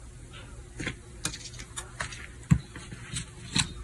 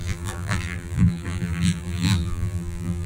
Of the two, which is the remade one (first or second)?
second